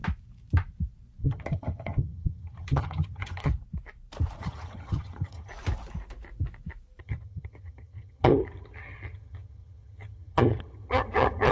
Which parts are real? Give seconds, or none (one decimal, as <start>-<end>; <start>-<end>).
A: 0.0-1.2; 3.5-4.4; 5.5-7.0